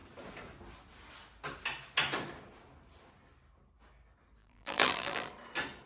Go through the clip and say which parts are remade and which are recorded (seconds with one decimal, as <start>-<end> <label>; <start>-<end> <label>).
0.0-4.4 recorded; 4.4-5.3 remade; 5.3-5.9 recorded